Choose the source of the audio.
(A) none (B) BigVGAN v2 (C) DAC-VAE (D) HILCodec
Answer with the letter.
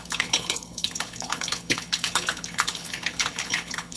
D